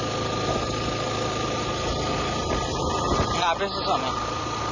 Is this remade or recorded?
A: recorded